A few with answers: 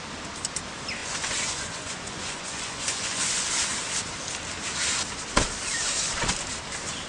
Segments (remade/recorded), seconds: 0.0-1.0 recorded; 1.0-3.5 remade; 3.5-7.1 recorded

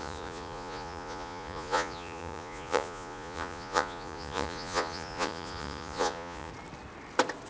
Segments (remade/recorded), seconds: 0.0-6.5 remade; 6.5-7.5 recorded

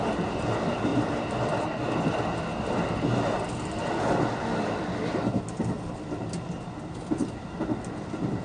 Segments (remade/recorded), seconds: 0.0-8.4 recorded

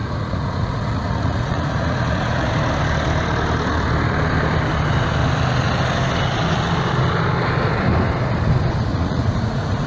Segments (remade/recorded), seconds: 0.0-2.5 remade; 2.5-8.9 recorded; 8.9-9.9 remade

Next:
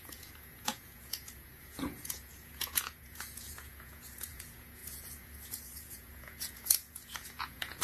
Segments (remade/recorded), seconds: 0.0-7.8 remade